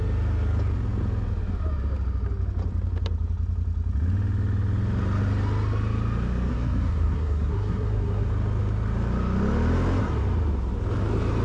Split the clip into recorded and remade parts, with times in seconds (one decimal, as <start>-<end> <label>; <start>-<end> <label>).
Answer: 0.0-6.5 recorded; 6.5-8.3 remade; 8.3-11.4 recorded